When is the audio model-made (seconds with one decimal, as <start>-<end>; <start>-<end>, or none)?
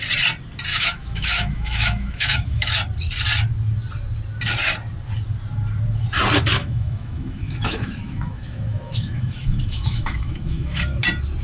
0.7-2.7; 6.6-11.0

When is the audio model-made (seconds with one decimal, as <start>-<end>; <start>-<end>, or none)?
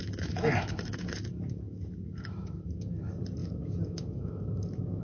0.0-3.0; 3.4-5.0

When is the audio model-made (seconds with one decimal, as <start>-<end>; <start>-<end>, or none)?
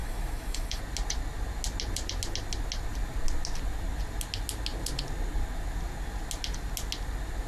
0.0-0.8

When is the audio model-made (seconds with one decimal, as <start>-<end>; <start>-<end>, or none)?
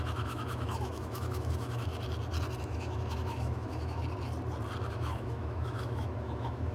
0.0-1.9; 2.6-4.0; 4.9-6.7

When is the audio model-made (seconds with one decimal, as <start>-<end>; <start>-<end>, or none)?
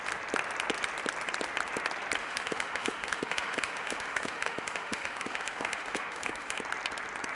2.2-6.6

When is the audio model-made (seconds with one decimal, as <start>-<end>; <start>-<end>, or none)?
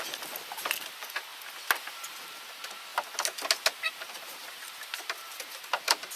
none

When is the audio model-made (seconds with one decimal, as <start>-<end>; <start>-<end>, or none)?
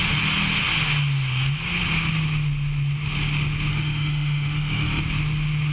3.7-5.0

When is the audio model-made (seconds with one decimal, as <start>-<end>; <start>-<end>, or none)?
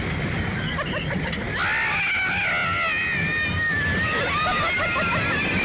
none